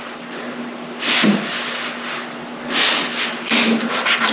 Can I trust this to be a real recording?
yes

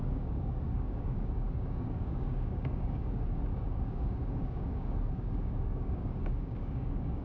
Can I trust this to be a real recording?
no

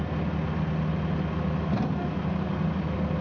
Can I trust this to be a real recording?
yes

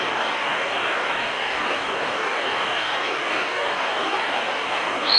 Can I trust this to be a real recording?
no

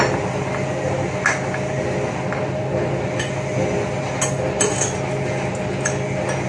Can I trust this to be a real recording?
yes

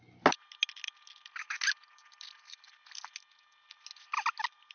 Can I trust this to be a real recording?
yes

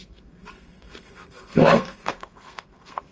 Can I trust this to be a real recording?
no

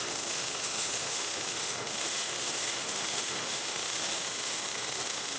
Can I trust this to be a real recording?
no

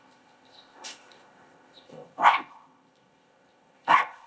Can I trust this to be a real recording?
no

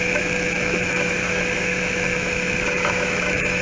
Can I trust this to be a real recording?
no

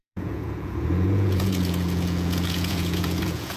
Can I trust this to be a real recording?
no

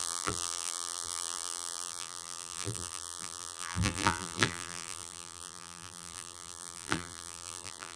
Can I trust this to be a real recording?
no